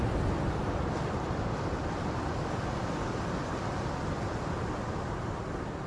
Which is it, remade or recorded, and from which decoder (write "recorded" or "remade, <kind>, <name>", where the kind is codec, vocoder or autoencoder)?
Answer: remade, vocoder, BigVGAN v2